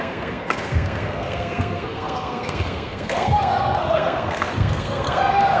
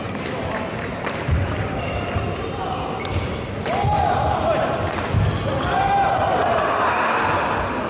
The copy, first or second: first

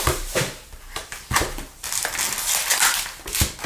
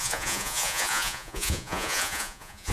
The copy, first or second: second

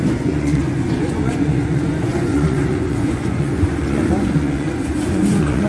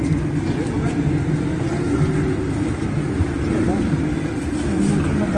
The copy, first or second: first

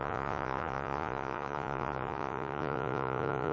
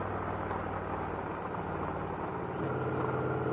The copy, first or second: first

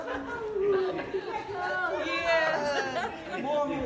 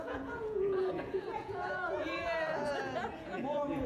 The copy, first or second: second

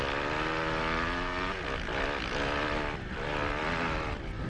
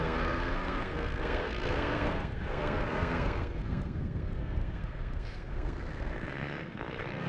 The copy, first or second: second